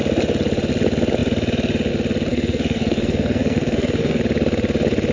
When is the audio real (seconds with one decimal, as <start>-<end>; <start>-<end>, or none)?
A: 0.0-2.3; 4.2-5.1